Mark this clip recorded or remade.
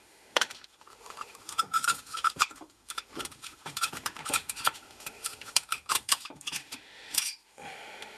remade